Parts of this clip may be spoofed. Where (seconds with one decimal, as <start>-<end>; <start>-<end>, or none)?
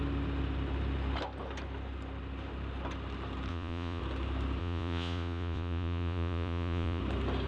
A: 3.5-4.0; 4.6-7.0